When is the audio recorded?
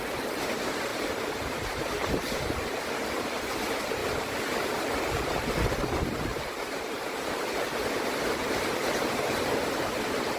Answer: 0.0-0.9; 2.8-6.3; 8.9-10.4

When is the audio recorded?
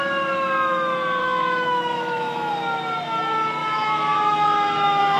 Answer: 0.0-1.2; 2.5-3.6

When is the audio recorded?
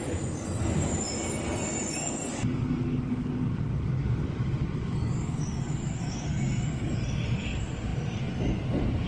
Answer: 0.0-2.3; 6.9-9.1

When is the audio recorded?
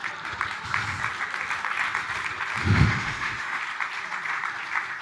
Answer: 0.0-2.6; 3.6-5.0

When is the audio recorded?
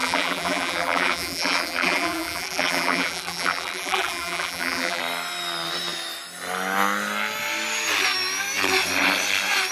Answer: 5.0-9.7